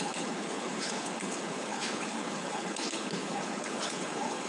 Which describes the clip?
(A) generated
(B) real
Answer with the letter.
A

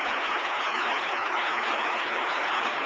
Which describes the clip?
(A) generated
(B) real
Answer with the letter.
A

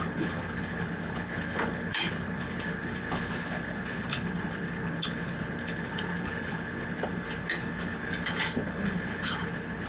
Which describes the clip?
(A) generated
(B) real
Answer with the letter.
A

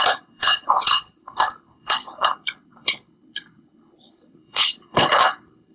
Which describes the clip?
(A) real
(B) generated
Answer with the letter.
B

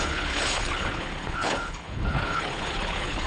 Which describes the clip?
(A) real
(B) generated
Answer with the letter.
B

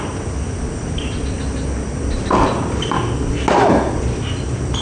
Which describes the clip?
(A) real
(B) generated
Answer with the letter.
A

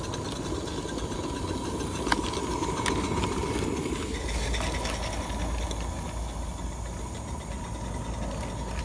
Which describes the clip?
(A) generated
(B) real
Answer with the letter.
B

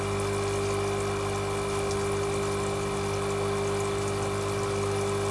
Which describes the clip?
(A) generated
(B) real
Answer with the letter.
B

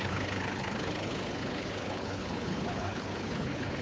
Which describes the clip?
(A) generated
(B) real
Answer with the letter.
A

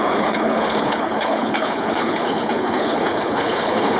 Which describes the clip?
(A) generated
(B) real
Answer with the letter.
A